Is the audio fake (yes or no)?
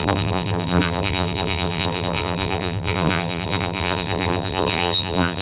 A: yes